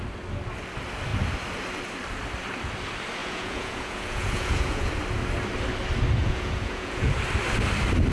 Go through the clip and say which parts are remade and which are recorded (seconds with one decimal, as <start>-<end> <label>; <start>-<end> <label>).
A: 0.0-3.2 recorded; 3.2-4.9 remade; 4.9-6.2 recorded; 6.2-7.1 remade; 7.1-8.1 recorded